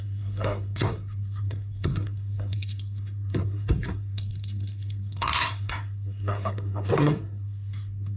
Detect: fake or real fake